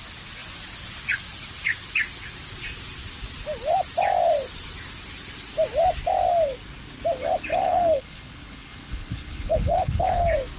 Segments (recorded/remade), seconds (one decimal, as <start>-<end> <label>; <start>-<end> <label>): 0.0-7.5 recorded; 7.5-10.2 remade; 10.2-10.6 recorded